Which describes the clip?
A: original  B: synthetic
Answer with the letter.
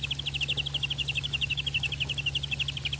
A